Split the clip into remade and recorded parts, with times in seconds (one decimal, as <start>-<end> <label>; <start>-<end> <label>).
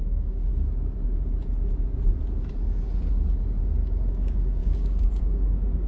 0.0-0.5 remade; 0.5-3.6 recorded; 3.6-5.9 remade